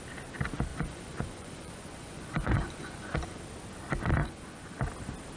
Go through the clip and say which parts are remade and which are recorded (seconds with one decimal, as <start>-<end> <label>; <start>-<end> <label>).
0.0-0.7 recorded; 0.7-3.4 remade; 3.4-4.2 recorded; 4.2-4.8 remade; 4.8-5.4 recorded